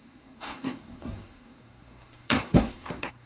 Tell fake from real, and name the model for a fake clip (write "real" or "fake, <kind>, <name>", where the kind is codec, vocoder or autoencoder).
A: fake, codec, SNAC